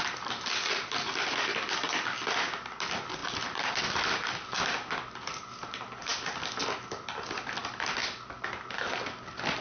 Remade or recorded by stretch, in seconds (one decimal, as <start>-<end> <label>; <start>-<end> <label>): 0.0-9.6 recorded